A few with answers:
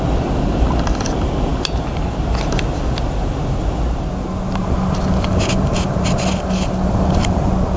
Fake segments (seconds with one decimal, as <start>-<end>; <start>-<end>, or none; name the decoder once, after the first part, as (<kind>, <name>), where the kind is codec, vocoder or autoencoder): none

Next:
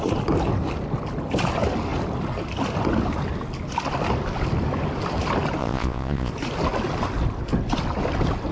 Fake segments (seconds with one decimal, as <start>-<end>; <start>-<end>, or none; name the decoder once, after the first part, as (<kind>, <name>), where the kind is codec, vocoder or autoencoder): 5.6-6.3 (vocoder, Vocos)

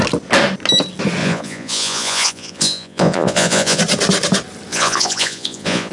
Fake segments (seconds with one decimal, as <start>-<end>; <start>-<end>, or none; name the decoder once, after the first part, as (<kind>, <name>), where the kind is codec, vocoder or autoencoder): 1.2-3.8 (vocoder, Vocos); 4.7-5.9